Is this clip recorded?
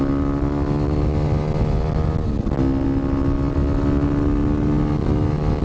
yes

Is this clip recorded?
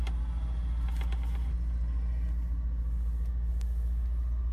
yes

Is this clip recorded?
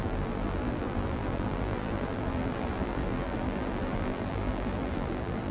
no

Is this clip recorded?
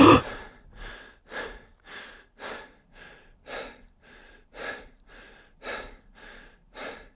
no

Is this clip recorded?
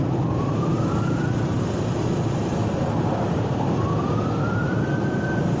yes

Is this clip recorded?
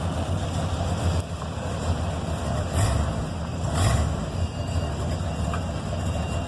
yes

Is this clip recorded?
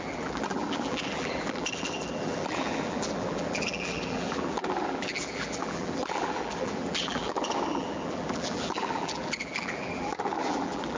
no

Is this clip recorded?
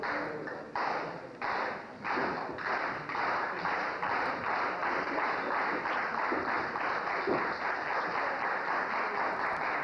yes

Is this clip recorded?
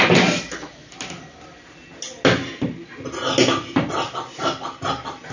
yes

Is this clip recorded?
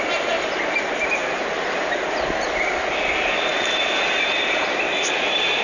no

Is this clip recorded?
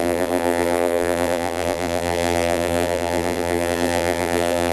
no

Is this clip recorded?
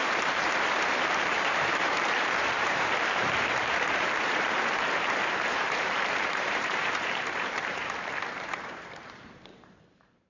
no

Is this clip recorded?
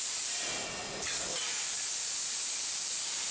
no